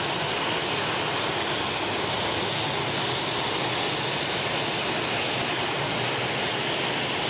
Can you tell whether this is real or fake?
real